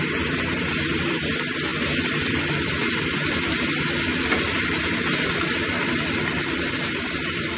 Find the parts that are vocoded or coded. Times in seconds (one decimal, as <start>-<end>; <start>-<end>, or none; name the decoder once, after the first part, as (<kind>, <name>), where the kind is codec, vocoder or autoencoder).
none